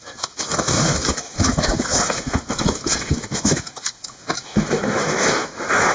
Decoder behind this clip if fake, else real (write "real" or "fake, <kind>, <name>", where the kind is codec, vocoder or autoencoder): fake, autoencoder, DAC-VAE